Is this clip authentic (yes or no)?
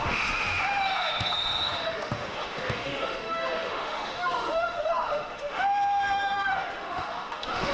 no